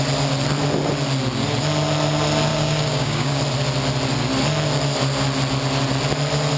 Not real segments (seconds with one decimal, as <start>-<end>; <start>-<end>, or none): 2.5-3.4